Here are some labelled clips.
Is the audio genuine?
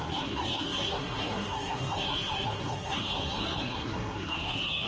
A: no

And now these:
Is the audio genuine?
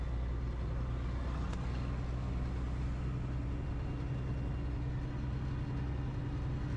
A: yes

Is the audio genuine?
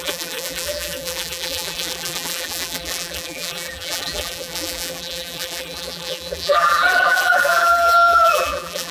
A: no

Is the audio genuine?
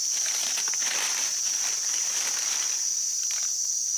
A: yes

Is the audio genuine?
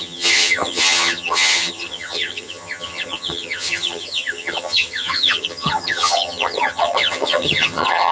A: no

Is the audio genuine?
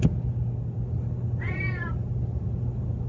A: yes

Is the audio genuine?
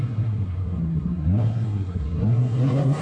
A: no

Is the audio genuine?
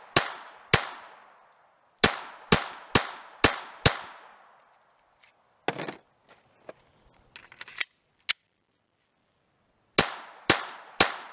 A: yes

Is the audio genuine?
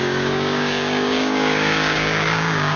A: no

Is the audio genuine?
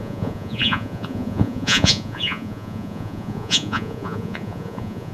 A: no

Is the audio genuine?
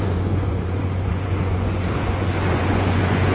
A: no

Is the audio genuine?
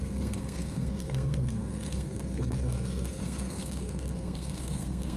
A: no